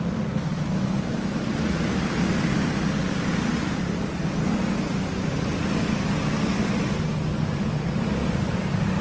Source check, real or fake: real